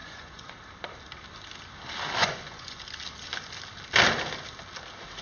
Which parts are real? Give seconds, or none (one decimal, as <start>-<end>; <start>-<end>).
0.5-2.2; 2.8-5.2